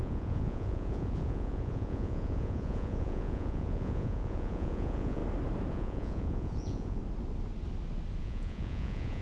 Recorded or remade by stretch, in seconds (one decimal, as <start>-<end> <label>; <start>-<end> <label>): 0.0-5.2 remade; 5.2-5.7 recorded; 5.7-7.0 remade; 7.0-8.2 recorded; 8.2-9.2 remade